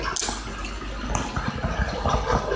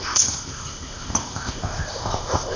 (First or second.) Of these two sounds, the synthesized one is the second